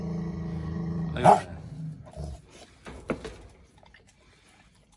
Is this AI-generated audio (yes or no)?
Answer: no